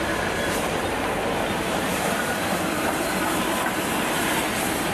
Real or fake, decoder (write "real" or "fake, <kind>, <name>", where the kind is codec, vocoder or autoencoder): fake, vocoder, BigVGAN v2